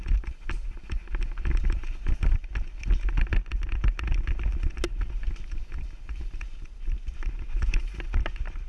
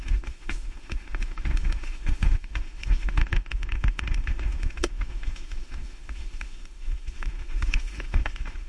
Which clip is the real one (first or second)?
first